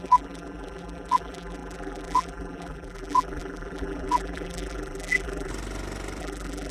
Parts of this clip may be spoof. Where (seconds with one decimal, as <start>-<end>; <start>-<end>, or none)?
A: 0.0-5.5; 6.2-6.7